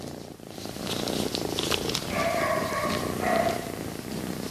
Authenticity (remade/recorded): remade